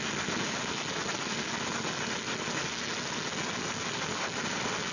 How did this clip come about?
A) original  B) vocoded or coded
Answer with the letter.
A